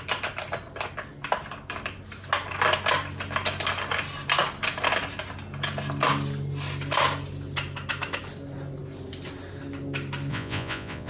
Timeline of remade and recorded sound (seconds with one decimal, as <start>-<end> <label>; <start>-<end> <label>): 0.0-10.3 recorded; 10.3-11.1 remade